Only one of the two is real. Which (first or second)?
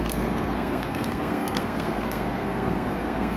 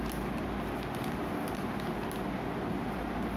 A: second